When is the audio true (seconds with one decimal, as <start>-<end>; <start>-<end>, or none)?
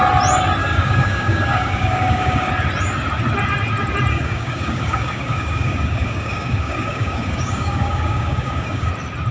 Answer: 0.0-0.6; 2.5-4.1; 8.9-9.3